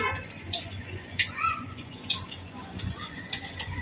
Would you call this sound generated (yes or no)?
yes